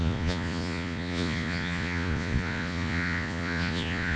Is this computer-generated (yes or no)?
yes